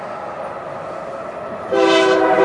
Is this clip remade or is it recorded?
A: recorded